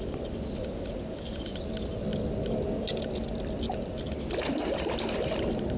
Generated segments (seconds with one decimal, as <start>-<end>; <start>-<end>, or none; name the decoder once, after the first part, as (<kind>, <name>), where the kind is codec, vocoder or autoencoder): none